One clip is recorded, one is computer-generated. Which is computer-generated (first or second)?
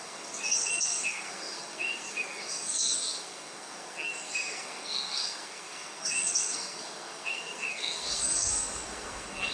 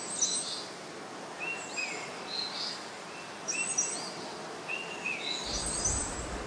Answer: first